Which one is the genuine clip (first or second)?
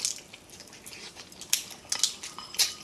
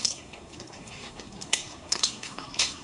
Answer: first